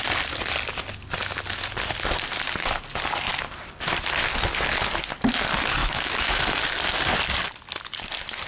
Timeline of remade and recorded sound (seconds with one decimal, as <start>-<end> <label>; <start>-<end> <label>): 0.0-5.8 recorded; 5.8-6.4 remade; 6.4-8.5 recorded